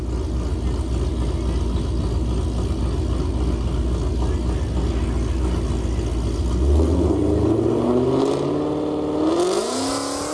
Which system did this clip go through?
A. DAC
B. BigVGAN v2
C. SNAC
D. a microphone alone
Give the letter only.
D